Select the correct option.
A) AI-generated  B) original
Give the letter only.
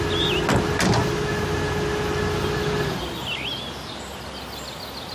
B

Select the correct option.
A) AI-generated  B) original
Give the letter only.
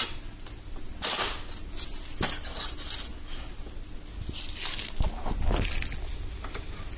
B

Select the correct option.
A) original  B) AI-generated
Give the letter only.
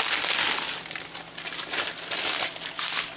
A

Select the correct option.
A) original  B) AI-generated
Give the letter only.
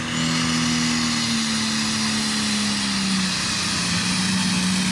A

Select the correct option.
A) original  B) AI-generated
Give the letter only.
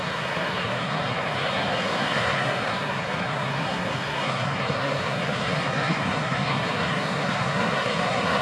B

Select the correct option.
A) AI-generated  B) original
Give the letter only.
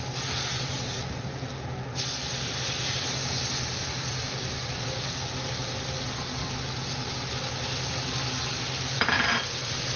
B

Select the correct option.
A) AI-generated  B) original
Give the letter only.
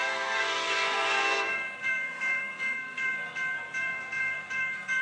A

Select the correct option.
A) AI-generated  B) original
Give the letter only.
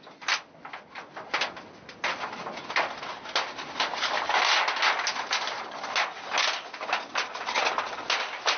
B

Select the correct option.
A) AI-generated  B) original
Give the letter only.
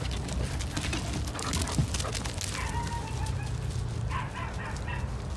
B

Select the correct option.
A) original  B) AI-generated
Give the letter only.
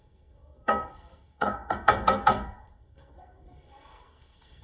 B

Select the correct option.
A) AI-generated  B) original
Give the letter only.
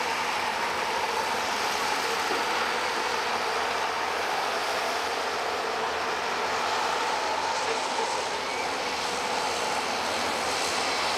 B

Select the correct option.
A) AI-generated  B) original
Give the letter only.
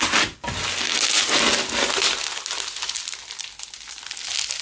B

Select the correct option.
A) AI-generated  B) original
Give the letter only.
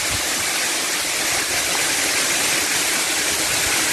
B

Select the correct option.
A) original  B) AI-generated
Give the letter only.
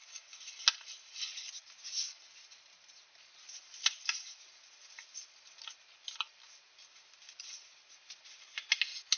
A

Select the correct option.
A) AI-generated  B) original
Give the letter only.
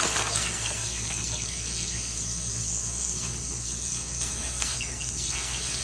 A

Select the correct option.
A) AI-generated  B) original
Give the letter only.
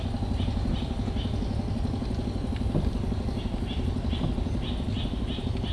B